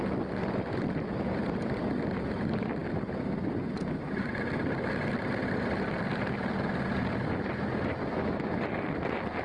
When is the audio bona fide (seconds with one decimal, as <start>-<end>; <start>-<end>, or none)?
0.0-8.0; 8.5-9.4